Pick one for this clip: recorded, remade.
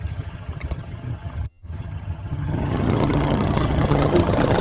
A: remade